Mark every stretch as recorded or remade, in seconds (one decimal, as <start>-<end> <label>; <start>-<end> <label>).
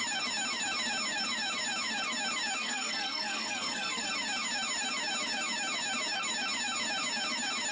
0.0-2.6 recorded; 2.6-4.1 remade; 4.1-7.7 recorded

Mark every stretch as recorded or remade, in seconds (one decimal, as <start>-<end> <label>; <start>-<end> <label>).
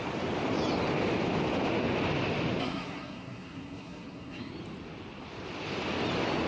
0.0-2.6 recorded; 2.6-4.5 remade; 4.5-6.5 recorded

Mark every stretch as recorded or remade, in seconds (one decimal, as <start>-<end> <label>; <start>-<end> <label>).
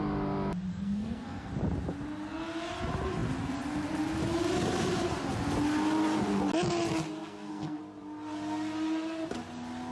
0.0-0.7 recorded; 0.7-1.5 remade; 1.5-7.2 recorded; 7.2-7.8 remade; 7.8-9.9 recorded